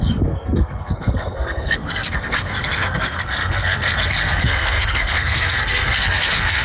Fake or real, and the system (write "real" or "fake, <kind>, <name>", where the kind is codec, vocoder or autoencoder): fake, codec, SNAC